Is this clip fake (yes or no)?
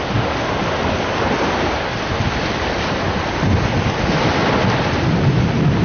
no